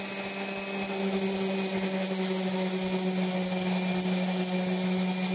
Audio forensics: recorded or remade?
recorded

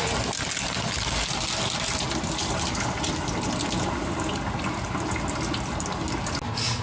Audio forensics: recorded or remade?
recorded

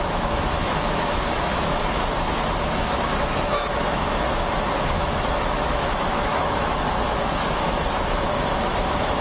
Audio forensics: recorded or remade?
remade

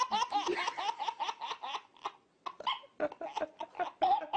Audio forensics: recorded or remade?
recorded